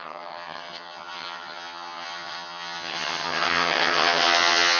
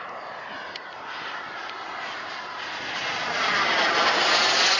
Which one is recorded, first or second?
second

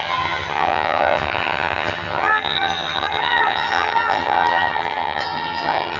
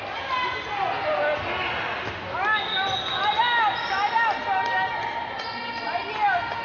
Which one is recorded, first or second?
second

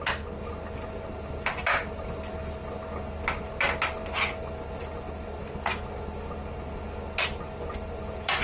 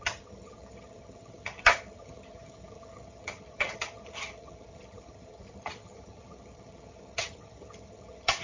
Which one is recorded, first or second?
first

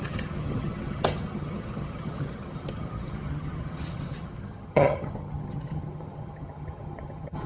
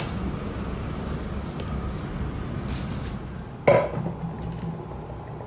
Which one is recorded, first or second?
second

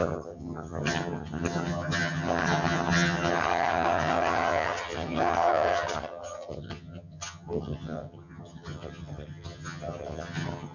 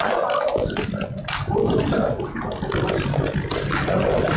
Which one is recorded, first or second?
second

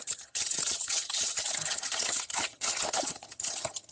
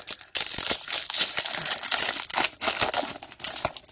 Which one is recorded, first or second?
second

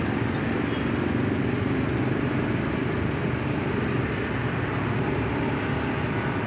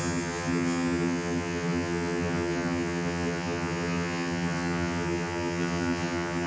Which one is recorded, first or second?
first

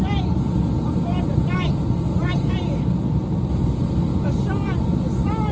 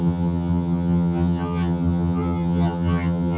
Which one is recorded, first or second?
first